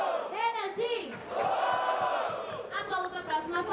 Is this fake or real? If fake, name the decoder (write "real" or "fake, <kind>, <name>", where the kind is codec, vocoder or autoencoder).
real